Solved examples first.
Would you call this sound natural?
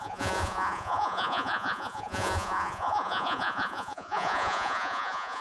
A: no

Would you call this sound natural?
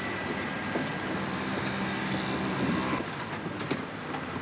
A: yes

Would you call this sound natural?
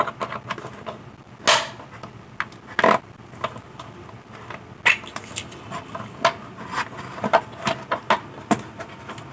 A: yes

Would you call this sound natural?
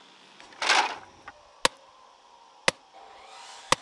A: yes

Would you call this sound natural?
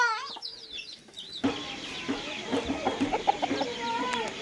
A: yes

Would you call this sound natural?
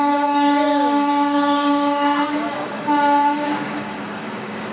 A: no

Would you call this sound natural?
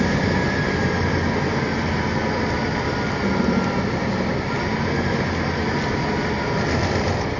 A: yes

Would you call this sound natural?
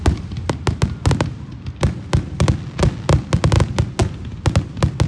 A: yes